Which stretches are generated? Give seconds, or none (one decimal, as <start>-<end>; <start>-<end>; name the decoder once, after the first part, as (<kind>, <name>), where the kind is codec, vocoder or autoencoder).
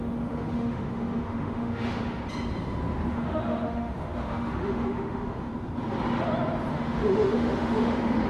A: 0.0-2.2 (autoencoder, DAC-VAE); 3.1-5.5; 6.7-8.3